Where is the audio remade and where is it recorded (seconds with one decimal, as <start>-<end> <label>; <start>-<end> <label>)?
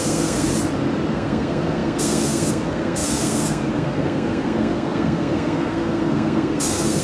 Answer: 0.0-0.5 remade; 0.5-1.1 recorded; 1.1-7.0 remade